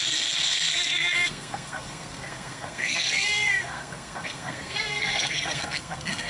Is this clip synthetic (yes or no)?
yes